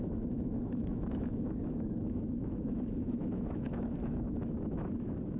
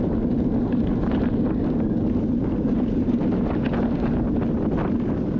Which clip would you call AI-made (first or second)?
first